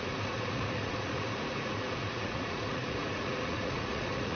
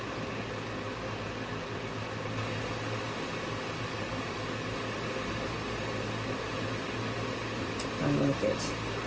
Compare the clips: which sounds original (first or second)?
second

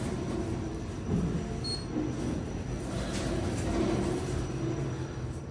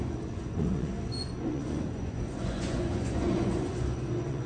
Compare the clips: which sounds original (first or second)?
first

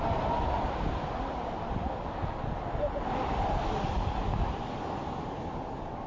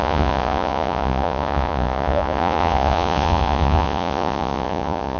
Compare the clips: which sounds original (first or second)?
first